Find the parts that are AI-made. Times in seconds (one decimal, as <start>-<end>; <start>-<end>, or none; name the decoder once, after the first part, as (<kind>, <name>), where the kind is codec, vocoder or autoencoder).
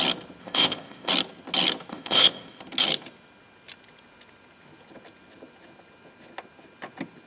0.4-1.1 (codec, ZipCodec); 1.9-2.6